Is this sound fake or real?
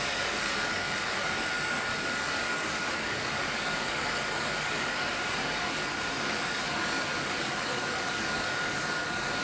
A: fake